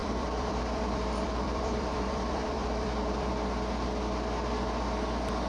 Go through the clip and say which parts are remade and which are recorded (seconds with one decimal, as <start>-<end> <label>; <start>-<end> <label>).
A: 0.0-3.3 remade; 3.3-5.5 recorded